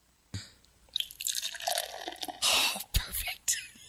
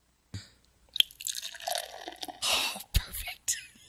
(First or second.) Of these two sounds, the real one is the second